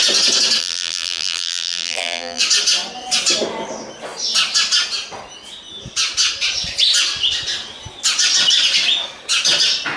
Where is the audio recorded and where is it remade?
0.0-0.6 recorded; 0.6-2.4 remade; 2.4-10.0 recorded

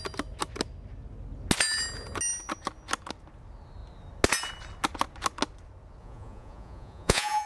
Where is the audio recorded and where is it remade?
0.0-6.0 recorded; 6.0-7.5 remade

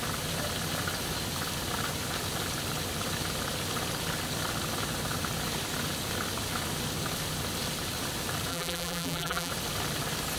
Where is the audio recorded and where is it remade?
0.0-8.5 recorded; 8.5-9.5 remade; 9.5-10.4 recorded

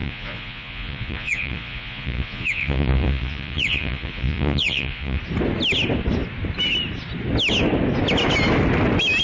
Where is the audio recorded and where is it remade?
0.0-5.2 remade; 5.2-9.2 recorded

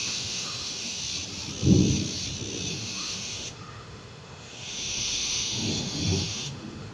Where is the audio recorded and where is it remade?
0.0-1.0 remade; 1.0-2.7 recorded; 2.7-6.9 remade